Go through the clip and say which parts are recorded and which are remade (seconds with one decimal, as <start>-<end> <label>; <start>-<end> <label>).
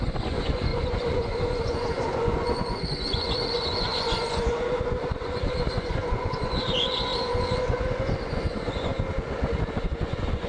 0.0-8.9 remade; 8.9-9.8 recorded; 9.8-10.5 remade